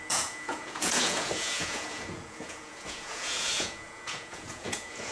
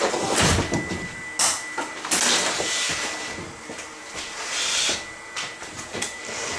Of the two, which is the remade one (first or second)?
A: first